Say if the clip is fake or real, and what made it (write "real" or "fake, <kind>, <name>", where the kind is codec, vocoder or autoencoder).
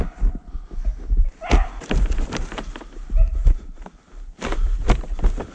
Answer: real